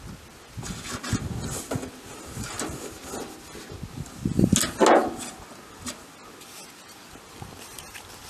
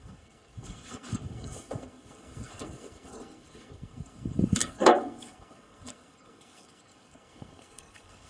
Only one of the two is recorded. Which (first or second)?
first